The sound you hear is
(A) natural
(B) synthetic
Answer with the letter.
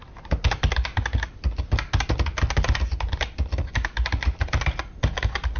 A